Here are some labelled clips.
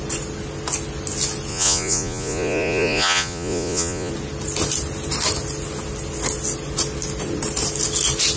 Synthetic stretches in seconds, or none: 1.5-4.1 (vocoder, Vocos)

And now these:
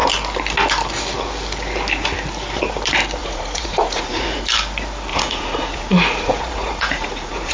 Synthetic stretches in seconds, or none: 3.2-4.4 (vocoder, Vocos); 5.1-7.5

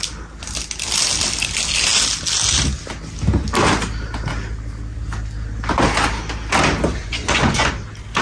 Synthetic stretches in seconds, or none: 7.0-7.7 (vocoder, Vocos)

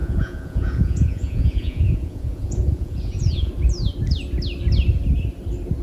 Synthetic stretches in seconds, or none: 0.0-3.5 (vocoder, Vocos)

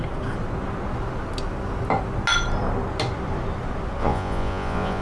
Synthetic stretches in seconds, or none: 4.0-5.0 (vocoder, Vocos)